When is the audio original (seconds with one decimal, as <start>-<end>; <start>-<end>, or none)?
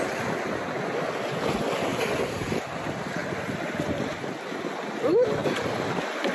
0.0-1.9; 2.5-5.4